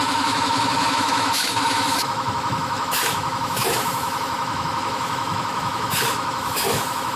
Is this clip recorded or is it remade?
remade